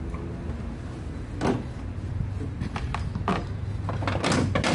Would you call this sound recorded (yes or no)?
yes